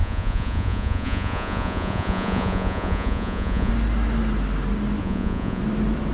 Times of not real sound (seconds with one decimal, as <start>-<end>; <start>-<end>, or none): 0.0-3.7; 5.0-5.6